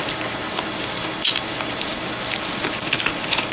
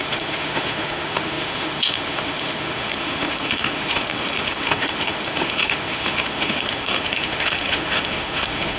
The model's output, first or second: second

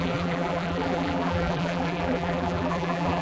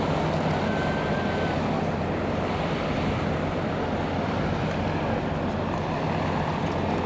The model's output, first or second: first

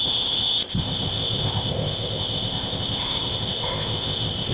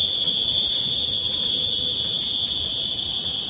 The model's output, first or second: first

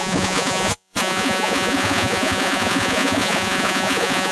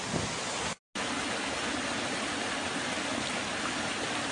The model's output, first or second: first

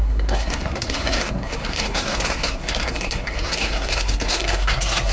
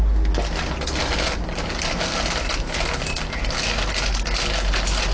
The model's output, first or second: first